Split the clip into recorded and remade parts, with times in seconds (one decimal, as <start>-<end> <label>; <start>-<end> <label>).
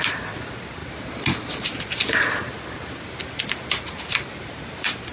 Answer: 0.0-5.1 recorded